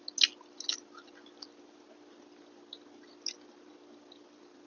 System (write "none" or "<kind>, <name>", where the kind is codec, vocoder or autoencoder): none